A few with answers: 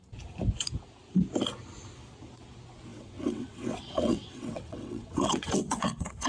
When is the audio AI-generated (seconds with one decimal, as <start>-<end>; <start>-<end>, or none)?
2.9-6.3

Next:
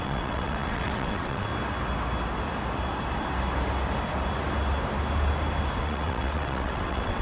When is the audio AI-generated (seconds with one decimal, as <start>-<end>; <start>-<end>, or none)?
0.0-1.5; 5.8-7.2

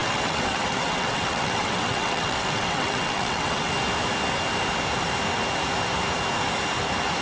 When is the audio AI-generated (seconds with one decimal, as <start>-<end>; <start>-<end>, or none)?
0.0-3.7